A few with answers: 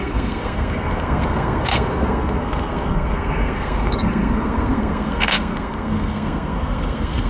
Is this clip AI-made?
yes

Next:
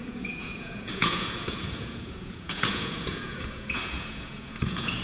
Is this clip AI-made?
yes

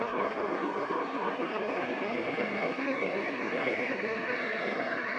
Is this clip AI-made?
yes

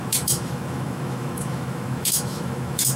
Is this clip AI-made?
yes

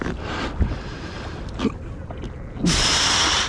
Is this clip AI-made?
no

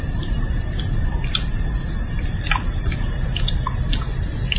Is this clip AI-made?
no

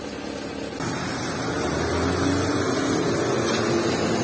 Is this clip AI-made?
no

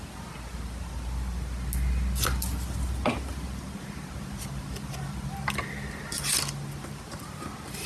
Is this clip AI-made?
no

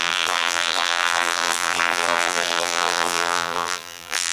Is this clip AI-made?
yes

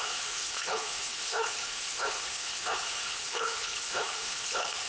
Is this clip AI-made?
yes